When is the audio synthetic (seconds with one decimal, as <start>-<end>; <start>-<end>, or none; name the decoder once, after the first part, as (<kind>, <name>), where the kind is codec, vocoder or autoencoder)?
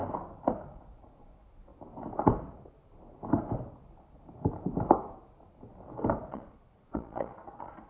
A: 0.7-1.7 (vocoder, Vocos); 6.3-7.9